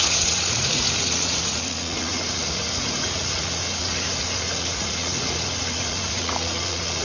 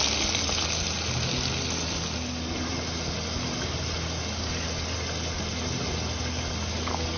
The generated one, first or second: first